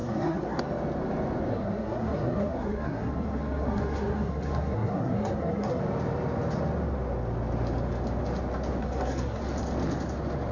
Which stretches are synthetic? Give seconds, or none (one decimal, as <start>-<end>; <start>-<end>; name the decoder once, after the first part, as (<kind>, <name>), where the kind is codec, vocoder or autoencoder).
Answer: 0.0-0.6 (codec, SNAC); 1.5-5.8; 8.8-9.4